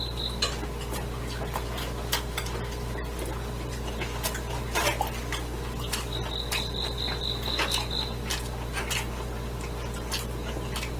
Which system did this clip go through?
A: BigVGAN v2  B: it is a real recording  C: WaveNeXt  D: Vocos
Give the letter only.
A